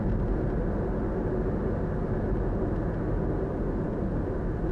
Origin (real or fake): real